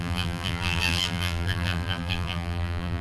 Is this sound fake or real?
fake